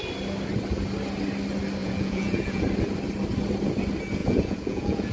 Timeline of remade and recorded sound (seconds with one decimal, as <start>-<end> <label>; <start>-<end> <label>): 0.0-1.8 recorded; 1.8-2.6 remade; 2.6-4.2 recorded; 4.2-5.1 remade